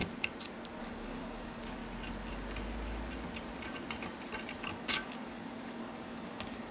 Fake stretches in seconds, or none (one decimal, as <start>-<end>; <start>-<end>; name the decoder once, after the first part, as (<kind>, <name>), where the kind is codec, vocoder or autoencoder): 0.8-1.8 (codec, DAC); 4.6-6.7